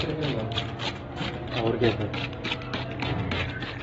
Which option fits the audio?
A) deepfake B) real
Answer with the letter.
B